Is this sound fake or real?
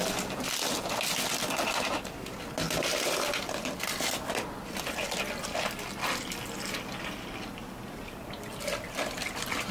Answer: real